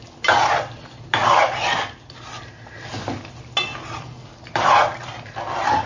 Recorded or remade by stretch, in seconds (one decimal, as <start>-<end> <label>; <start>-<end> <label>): 0.0-5.9 recorded